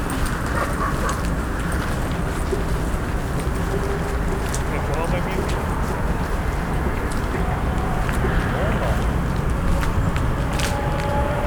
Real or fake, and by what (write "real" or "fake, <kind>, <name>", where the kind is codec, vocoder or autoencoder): real